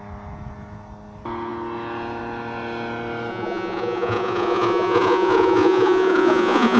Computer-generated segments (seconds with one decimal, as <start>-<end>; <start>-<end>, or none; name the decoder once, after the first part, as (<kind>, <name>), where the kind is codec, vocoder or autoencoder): 3.3-6.8 (vocoder, Vocos)

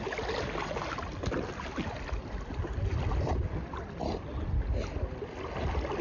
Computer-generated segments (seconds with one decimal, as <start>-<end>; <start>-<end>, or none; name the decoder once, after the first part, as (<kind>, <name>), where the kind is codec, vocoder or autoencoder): none

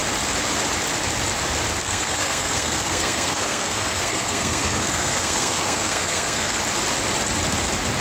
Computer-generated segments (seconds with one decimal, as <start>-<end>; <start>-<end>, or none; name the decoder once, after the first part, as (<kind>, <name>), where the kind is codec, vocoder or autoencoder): 1.8-6.6 (codec, SNAC)

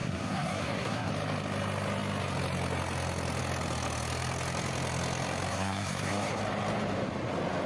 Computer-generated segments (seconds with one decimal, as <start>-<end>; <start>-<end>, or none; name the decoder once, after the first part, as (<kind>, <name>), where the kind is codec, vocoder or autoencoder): 0.0-1.1 (codec, SNAC); 5.5-6.4

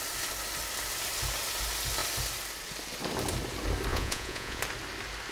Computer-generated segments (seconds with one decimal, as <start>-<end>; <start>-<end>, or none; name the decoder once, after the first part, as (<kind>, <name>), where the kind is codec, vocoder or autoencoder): 3.9-4.6 (vocoder, Vocos)